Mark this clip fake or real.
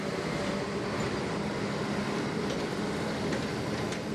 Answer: real